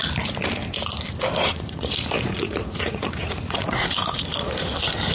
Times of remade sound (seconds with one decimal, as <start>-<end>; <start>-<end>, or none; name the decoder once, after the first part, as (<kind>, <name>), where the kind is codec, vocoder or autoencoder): 1.5-4.6 (vocoder, Vocos)